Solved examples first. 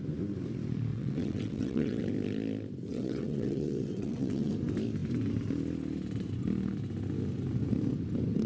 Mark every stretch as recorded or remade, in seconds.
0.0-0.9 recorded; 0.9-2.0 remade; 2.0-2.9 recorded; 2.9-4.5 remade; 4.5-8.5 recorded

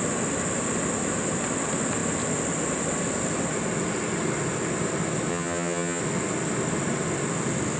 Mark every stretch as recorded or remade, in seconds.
0.0-5.3 recorded; 5.3-6.0 remade; 6.0-7.8 recorded

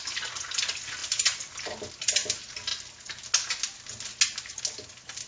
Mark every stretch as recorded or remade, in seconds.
0.0-5.3 recorded

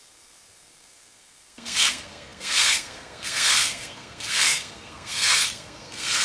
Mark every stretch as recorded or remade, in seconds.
0.0-6.2 remade

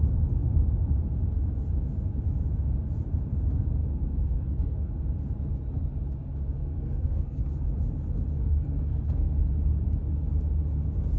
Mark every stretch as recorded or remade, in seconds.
0.0-3.8 recorded; 3.8-4.9 remade; 4.9-6.6 recorded; 6.6-7.4 remade; 7.4-8.4 recorded; 8.4-9.4 remade; 9.4-11.2 recorded